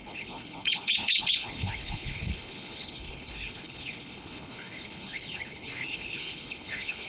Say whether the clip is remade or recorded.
remade